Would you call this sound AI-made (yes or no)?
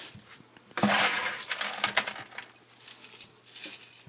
no